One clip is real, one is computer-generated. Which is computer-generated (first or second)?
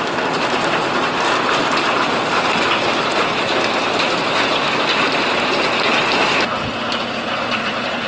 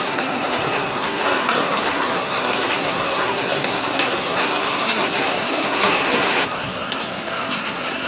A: second